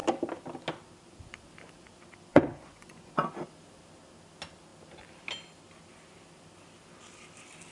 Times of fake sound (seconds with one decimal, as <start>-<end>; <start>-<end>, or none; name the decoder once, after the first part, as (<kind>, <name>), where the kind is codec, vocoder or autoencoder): 2.3-3.3 (vocoder, Vocos)